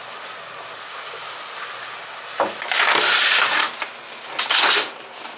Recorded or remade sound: recorded